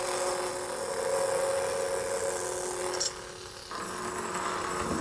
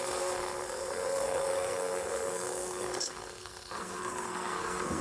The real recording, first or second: first